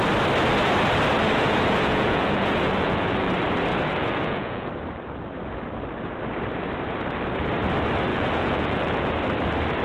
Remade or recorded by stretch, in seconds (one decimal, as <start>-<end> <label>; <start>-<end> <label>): 0.0-1.2 recorded; 1.2-3.3 remade; 3.3-3.7 recorded; 3.7-4.7 remade; 4.7-8.1 recorded; 8.1-9.2 remade; 9.2-9.8 recorded